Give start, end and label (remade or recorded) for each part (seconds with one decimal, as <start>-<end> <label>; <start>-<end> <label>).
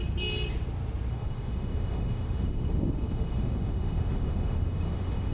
0.0-1.1 recorded; 1.1-5.3 remade